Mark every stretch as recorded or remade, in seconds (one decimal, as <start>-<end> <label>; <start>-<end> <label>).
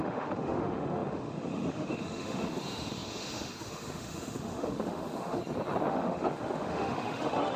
0.0-5.4 remade; 5.4-5.9 recorded; 5.9-7.6 remade